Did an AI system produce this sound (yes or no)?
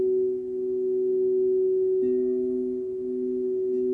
no